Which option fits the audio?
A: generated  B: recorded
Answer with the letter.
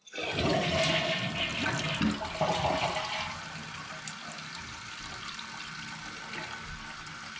B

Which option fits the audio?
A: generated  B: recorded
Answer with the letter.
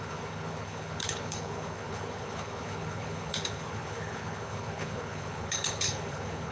A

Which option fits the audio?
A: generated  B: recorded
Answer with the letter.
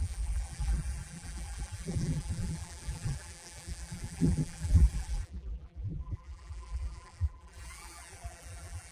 A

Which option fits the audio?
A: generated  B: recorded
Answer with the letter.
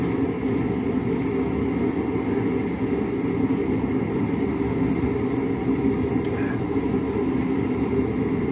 B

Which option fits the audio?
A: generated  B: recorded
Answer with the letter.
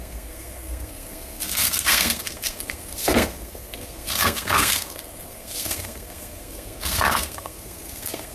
A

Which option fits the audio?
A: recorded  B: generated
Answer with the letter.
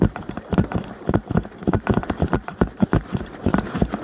B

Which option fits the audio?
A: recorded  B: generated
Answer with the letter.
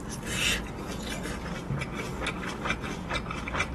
A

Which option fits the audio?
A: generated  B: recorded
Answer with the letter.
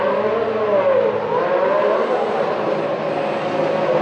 B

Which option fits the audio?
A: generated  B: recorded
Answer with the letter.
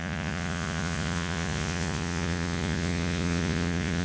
A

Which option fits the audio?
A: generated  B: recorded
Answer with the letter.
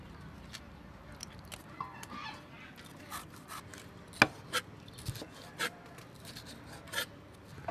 B